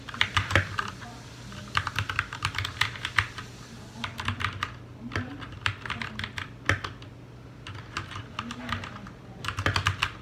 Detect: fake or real real